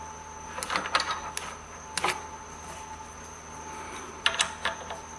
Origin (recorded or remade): recorded